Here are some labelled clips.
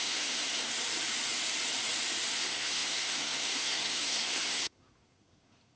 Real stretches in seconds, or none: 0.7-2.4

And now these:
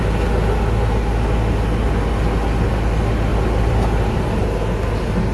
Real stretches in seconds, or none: 0.0-3.3; 4.4-5.3

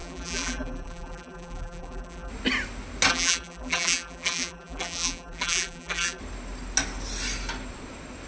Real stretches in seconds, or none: 2.3-3.1; 6.2-8.3

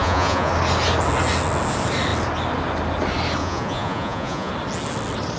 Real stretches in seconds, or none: 0.5-3.4; 4.5-5.4